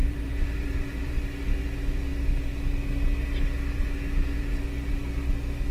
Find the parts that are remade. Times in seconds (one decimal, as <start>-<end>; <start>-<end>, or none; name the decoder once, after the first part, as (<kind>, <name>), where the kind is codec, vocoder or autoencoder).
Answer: 0.0-1.2 (vocoder, BigVGAN v2)